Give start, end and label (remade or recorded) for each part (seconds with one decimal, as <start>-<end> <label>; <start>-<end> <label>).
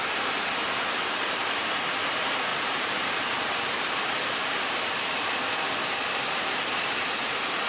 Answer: 0.0-0.4 recorded; 0.4-1.8 remade; 1.8-2.5 recorded; 2.5-7.1 remade; 7.1-7.7 recorded